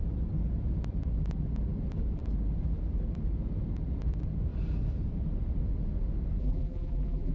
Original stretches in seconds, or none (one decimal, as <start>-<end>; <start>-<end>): 0.0-6.4